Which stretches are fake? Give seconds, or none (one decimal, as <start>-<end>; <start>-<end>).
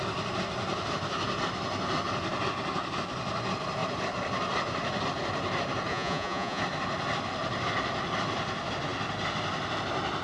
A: 5.9-6.6